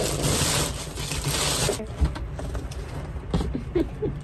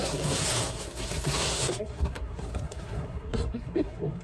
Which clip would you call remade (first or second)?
second